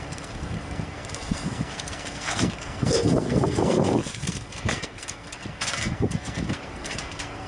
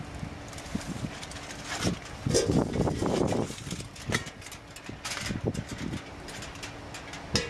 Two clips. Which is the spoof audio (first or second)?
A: first